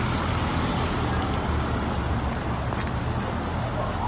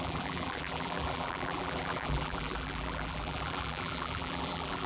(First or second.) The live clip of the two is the first